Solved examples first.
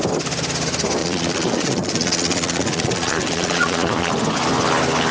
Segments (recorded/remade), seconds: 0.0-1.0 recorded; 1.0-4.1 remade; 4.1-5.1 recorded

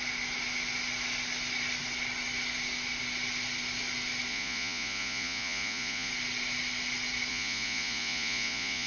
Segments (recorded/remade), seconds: 0.0-4.3 recorded; 4.3-6.1 remade; 6.1-7.3 recorded; 7.3-8.9 remade